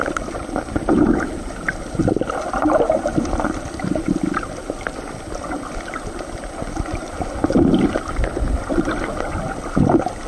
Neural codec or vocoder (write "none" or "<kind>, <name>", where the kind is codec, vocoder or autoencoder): none